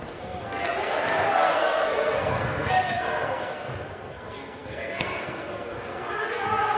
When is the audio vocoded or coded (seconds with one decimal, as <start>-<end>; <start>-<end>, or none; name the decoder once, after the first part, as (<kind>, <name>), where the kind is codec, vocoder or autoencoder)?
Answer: 0.0-6.8 (codec, SNAC)